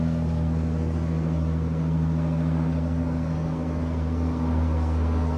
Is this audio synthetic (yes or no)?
yes